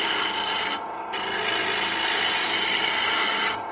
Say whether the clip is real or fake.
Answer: real